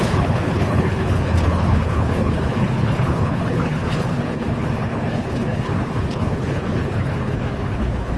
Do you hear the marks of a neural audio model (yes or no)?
yes